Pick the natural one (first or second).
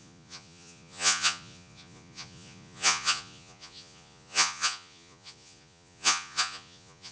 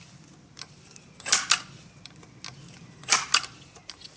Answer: second